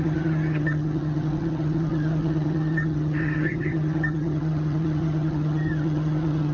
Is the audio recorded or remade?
remade